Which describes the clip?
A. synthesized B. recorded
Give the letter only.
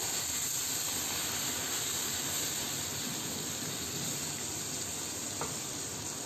B